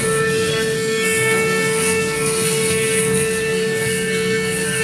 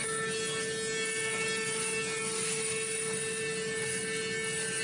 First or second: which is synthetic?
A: first